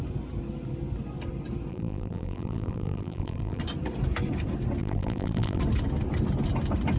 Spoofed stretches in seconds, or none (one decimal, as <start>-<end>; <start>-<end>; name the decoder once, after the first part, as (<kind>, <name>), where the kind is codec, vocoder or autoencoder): 1.7-3.6 (vocoder, BigVGAN v2); 4.8-5.6